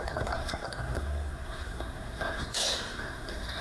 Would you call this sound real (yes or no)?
no